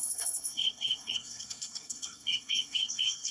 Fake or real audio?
fake